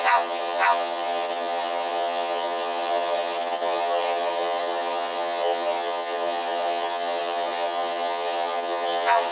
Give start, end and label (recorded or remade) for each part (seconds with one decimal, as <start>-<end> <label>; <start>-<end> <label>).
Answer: 0.0-9.3 remade